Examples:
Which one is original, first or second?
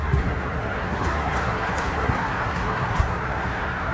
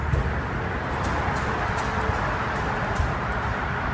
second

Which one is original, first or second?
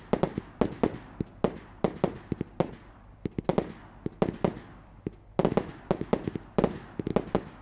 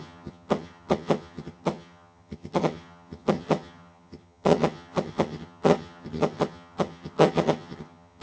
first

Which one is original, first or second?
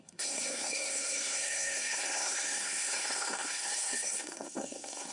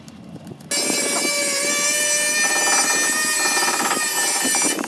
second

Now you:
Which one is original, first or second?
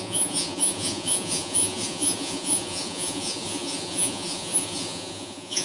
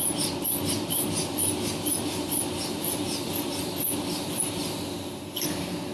second